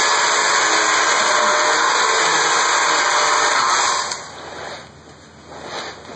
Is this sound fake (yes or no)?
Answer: no